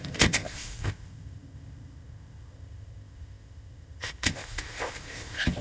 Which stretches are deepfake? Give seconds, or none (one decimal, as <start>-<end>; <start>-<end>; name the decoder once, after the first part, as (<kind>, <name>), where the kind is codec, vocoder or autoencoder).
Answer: 0.0-5.6 (codec, ZipCodec)

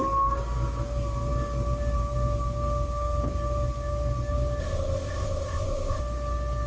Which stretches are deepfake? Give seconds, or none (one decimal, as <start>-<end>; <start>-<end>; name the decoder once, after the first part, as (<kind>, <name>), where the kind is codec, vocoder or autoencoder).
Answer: 4.6-6.0 (codec, ZipCodec)